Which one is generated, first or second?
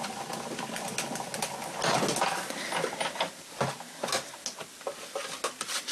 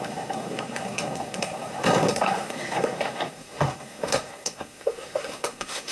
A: second